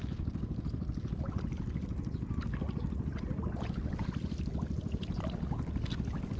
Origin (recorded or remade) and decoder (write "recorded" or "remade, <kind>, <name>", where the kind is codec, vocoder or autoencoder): recorded